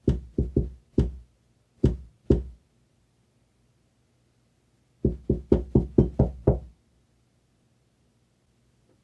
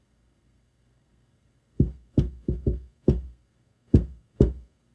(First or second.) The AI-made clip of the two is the second